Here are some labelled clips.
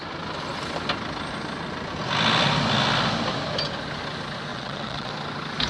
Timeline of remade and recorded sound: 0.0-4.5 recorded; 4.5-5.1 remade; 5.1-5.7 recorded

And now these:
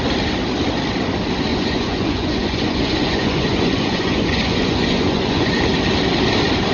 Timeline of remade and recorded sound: 0.0-1.5 recorded; 1.5-5.5 remade; 5.5-6.7 recorded

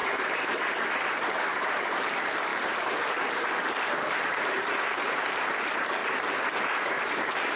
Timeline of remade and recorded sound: 0.0-7.6 remade

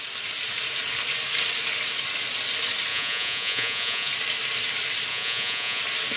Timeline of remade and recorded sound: 0.0-2.9 recorded; 2.9-4.1 remade; 4.1-5.1 recorded; 5.1-5.8 remade; 5.8-6.2 recorded

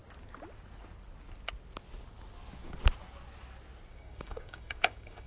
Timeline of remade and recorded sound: 0.0-3.9 recorded; 3.9-5.3 remade

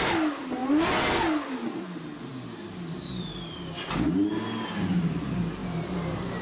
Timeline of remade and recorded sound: 0.0-6.4 recorded